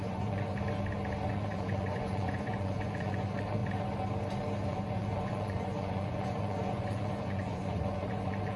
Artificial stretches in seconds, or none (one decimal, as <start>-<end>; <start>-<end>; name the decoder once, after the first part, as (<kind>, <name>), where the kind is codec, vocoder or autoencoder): 0.0-0.5 (vocoder, Vocos); 1.3-3.6; 4.7-8.6